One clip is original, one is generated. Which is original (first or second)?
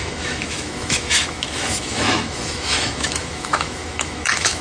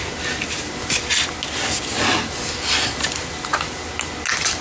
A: second